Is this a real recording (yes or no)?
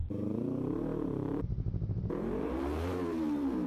no